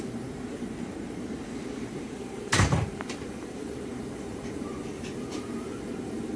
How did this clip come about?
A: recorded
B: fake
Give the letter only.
B